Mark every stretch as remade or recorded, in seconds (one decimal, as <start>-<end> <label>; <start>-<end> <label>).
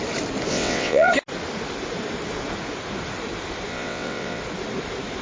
0.0-0.5 recorded; 0.5-1.1 remade; 1.1-3.7 recorded; 3.7-4.4 remade; 4.4-5.2 recorded